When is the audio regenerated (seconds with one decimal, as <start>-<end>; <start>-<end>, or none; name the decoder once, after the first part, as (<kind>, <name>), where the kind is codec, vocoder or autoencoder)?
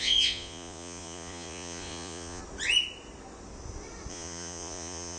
0.0-2.4 (vocoder, Vocos); 4.1-5.2